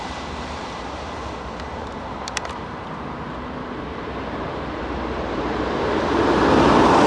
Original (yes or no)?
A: no